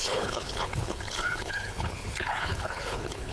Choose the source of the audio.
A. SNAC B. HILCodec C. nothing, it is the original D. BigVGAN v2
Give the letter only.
B